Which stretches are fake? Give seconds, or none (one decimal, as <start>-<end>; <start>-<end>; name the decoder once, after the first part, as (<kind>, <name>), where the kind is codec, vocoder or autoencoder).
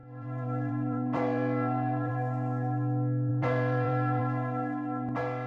0.0-2.1 (vocoder, BigVGAN v2); 3.3-4.2